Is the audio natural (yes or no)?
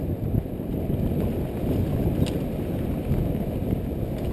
yes